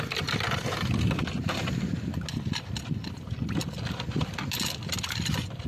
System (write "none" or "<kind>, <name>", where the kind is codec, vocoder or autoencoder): none